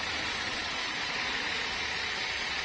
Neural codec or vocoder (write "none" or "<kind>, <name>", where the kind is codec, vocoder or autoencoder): none